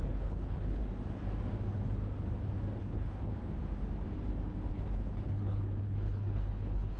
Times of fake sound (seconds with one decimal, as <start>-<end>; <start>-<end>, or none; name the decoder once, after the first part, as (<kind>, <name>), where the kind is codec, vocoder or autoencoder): 0.0-0.8 (codec, HILCodec); 2.8-3.3; 4.7-7.0